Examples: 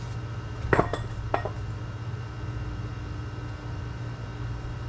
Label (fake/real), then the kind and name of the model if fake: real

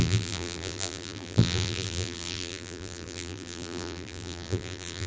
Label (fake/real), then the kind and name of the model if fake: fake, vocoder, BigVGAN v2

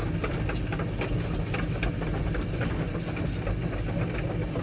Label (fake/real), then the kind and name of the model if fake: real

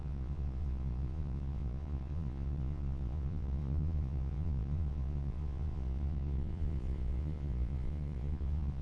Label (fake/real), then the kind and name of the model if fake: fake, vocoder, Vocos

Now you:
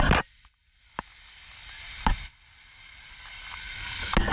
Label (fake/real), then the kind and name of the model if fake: real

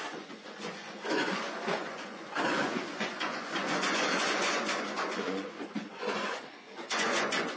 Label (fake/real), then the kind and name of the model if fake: fake, vocoder, Vocos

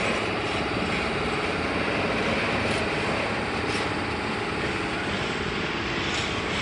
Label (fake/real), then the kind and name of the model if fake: real